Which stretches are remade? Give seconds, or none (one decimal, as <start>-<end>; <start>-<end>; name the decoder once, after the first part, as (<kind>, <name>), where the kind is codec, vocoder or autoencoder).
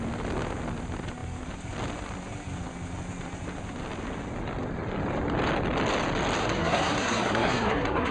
6.4-8.1 (codec, SNAC)